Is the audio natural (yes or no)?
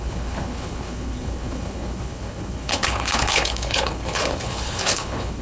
no